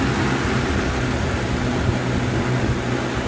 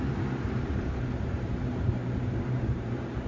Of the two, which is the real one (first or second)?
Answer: first